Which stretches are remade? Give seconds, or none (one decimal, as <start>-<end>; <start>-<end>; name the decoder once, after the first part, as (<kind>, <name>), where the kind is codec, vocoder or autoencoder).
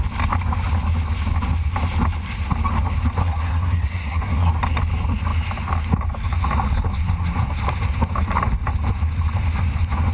3.2-4.5 (codec, SNAC)